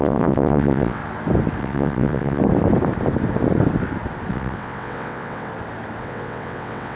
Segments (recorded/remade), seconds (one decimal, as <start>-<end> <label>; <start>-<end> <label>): 0.0-1.0 remade; 1.0-1.6 recorded; 1.6-2.4 remade; 2.4-4.3 recorded; 4.3-5.5 remade; 5.5-6.0 recorded; 6.0-7.0 remade